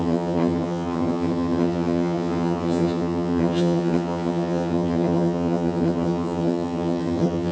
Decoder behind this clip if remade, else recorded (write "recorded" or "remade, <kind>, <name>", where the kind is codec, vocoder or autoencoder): remade, vocoder, HiFi-GAN